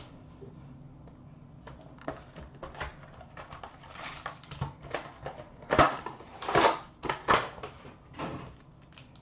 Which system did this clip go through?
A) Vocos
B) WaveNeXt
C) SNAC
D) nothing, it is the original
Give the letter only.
D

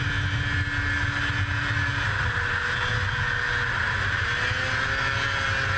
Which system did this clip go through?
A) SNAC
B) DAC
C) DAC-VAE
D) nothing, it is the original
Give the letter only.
D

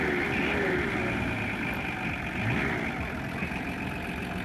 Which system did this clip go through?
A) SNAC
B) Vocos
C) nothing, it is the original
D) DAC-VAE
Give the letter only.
C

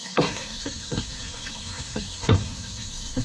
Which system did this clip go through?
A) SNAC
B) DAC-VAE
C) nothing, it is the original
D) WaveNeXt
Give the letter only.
A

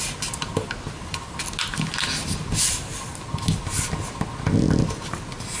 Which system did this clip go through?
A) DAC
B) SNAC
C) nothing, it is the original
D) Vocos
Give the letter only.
C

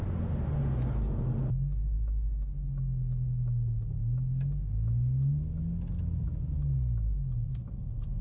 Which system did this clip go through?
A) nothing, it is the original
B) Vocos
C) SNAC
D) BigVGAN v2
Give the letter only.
A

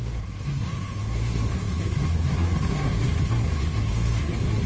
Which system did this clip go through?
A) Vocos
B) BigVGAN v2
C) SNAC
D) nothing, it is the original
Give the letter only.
C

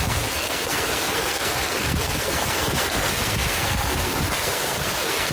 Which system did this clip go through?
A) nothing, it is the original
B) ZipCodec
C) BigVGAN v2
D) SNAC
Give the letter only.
D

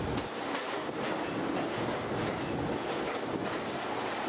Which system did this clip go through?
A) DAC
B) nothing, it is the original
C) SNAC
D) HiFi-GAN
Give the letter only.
B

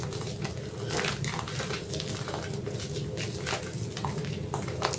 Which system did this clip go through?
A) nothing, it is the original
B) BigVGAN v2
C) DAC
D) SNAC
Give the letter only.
A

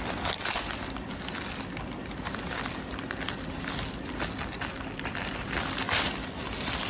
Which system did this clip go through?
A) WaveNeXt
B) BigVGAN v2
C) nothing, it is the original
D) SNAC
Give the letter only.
C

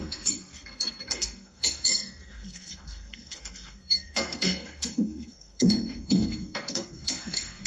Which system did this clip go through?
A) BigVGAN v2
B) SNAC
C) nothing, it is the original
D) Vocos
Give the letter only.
B